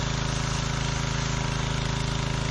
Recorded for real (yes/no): yes